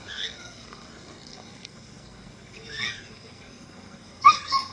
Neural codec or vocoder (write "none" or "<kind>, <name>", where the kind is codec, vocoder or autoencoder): codec, SNAC